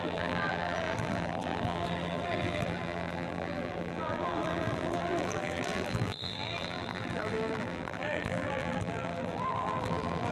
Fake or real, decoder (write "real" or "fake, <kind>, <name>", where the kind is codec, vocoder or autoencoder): fake, vocoder, BigVGAN v2